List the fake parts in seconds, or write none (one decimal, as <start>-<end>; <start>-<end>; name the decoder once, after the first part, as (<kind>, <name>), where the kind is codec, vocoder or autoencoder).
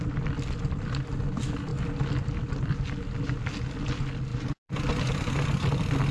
4.3-5.4 (vocoder, BigVGAN v2)